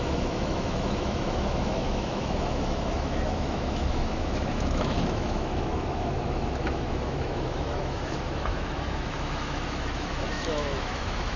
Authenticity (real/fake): fake